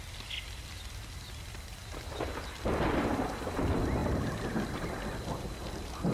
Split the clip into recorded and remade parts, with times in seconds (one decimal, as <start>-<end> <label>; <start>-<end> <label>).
0.0-1.8 recorded; 1.8-2.3 remade; 2.3-4.0 recorded; 4.0-4.9 remade; 4.9-6.1 recorded